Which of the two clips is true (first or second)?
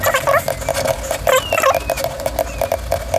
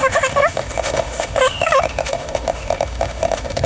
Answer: first